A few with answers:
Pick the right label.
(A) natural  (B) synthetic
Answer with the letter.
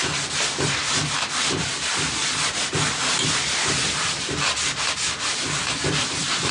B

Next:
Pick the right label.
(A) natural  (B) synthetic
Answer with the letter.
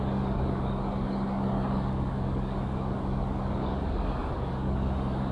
B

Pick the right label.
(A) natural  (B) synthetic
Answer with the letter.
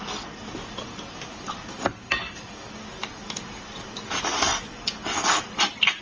A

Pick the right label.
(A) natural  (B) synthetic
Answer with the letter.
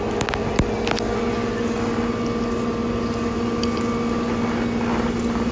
A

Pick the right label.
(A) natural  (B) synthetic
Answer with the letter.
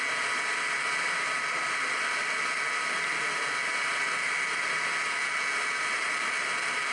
A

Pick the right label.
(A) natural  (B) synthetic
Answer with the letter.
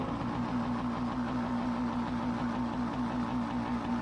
A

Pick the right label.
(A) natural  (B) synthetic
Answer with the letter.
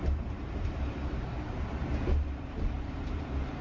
B